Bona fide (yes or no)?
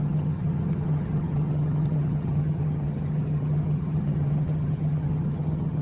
no